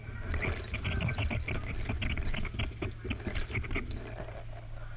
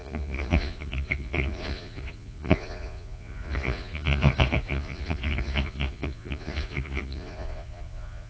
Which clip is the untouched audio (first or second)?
first